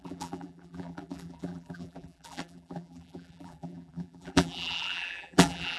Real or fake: fake